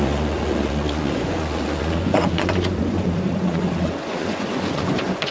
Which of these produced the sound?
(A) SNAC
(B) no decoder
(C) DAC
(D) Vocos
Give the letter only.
D